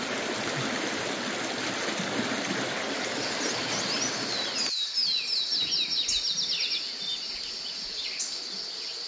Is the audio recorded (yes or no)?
yes